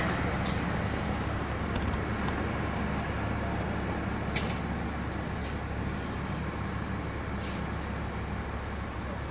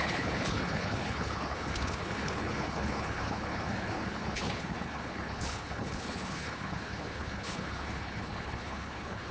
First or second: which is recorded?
first